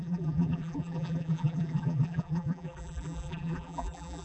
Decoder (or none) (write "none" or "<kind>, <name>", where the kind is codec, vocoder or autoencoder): vocoder, BigVGAN v2